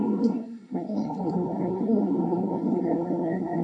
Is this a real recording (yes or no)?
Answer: no